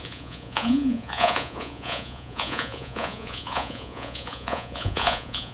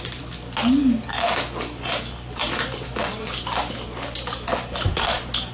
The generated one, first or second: first